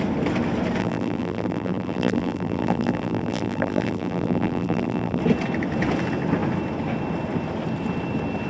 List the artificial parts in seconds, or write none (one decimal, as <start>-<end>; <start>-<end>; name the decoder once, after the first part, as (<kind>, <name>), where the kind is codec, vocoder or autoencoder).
0.8-5.2 (vocoder, BigVGAN v2)

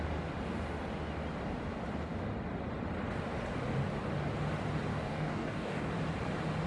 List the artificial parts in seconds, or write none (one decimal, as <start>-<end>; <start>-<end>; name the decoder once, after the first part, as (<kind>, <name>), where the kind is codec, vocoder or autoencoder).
4.9-5.9 (codec, DAC)

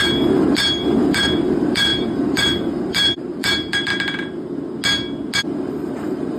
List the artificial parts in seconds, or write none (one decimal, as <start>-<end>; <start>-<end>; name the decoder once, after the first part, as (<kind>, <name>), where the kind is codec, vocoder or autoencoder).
0.0-3.9 (vocoder, BigVGAN v2); 5.5-6.4

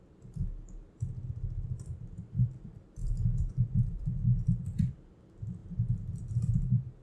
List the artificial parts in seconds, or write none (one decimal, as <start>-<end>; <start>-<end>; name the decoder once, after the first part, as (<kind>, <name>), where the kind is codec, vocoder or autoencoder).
0.0-0.4 (vocoder, BigVGAN v2); 1.3-5.6; 6.2-7.0

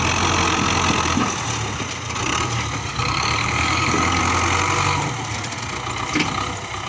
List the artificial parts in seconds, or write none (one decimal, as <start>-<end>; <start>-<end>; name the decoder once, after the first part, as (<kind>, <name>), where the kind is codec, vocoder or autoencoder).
2.9-4.2 (codec, DAC)